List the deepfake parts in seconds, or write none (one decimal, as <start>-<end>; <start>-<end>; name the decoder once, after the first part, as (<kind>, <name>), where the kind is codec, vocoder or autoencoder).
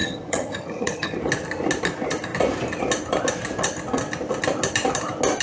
0.0-1.2 (vocoder, HiFi-GAN)